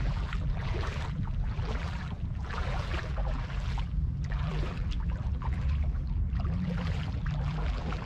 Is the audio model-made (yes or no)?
yes